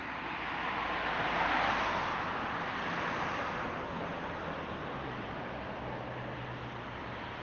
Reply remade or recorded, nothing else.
recorded